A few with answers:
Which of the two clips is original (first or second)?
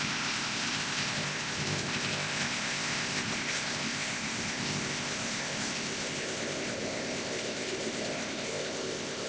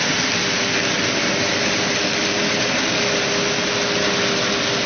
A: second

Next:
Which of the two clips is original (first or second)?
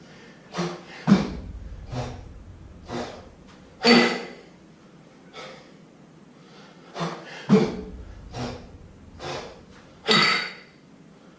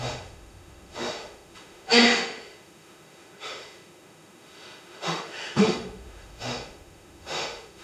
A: first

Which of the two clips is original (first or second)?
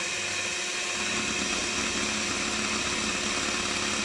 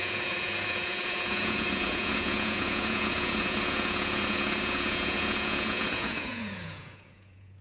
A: first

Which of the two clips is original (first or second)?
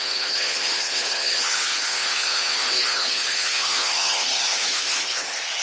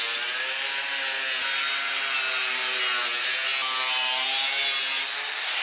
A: second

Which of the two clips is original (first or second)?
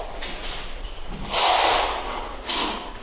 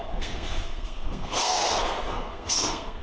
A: first